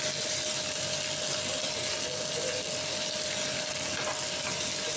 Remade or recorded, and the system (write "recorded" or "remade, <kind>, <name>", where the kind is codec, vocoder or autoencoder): recorded